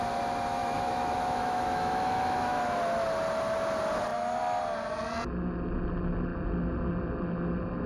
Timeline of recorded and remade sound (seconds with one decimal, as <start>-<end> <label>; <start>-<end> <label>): 0.0-0.6 recorded; 0.6-2.6 remade; 2.6-7.9 recorded